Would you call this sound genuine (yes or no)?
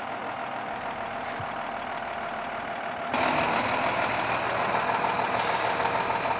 yes